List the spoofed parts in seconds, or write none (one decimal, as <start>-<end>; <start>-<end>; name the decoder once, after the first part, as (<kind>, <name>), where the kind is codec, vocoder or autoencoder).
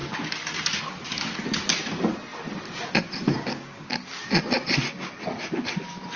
3.3-4.2 (codec, DAC)